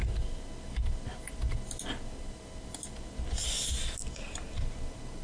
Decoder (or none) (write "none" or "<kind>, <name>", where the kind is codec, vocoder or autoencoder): none